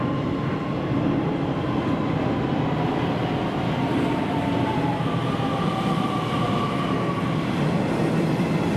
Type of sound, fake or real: real